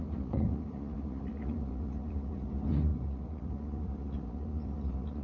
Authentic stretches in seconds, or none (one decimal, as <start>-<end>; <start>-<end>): none